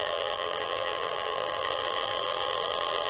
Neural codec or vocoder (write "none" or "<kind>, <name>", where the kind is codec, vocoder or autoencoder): vocoder, BigVGAN v2